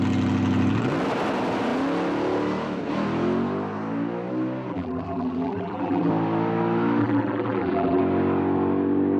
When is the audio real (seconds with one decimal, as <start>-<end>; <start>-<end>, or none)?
0.0-4.7; 6.1-7.0; 8.0-9.2

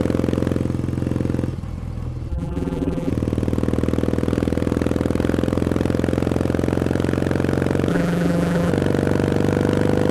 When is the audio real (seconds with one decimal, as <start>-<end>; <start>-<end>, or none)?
0.0-2.3; 3.1-7.9; 8.7-10.1

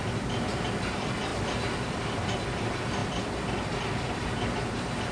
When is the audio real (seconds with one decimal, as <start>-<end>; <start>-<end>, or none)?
none

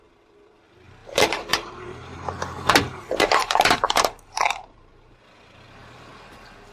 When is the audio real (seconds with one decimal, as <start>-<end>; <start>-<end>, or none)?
0.0-1.0; 2.3-2.9; 5.1-6.7

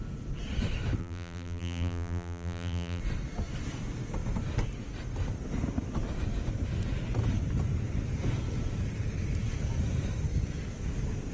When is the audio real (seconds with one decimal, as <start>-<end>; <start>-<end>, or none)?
0.0-1.0; 3.0-11.3

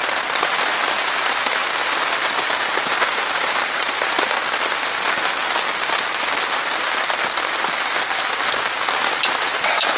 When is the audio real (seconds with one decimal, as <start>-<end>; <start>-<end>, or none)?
1.6-2.8; 4.4-9.0